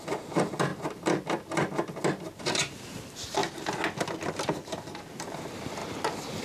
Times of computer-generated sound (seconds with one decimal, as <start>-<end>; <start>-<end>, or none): 0.0-0.7; 2.4-3.4; 5.1-5.8